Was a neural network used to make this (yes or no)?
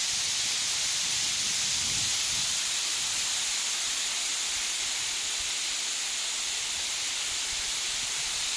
no